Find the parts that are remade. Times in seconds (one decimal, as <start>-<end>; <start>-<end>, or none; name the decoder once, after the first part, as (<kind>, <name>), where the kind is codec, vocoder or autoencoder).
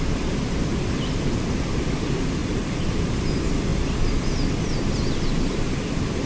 2.4-3.0 (vocoder, BigVGAN v2)